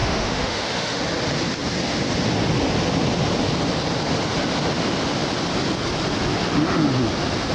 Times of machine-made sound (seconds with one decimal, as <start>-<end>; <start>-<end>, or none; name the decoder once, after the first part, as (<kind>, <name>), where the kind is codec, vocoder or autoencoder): 0.0-1.0 (autoencoder, DAC-VAE)